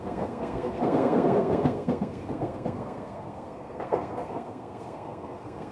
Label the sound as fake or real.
fake